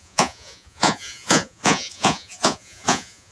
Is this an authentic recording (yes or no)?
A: no